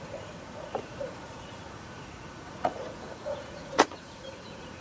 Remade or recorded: remade